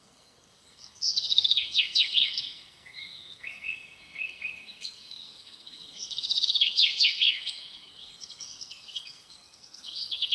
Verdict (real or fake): fake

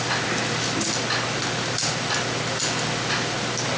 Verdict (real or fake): real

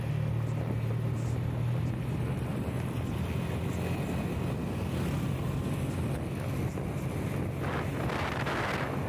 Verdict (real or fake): real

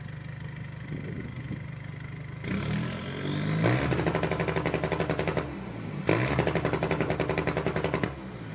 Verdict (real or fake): real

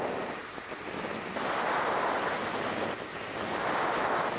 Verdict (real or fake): real